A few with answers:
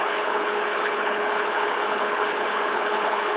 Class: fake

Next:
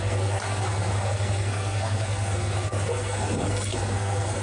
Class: fake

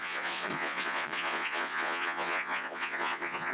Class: fake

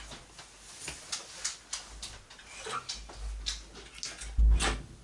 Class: real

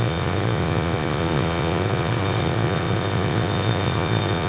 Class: fake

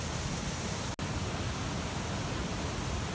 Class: real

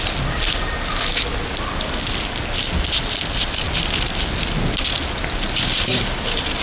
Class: real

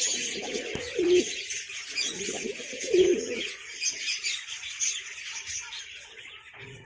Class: fake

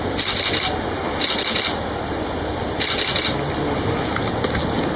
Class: real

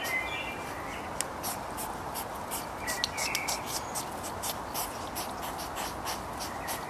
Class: real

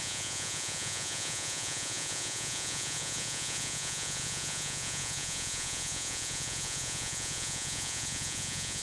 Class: fake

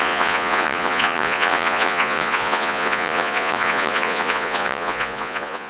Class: fake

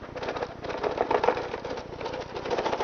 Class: real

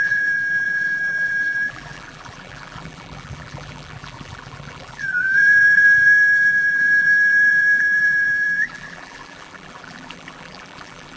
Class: fake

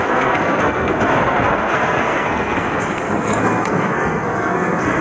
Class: fake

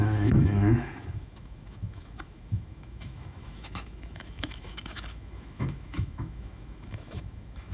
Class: fake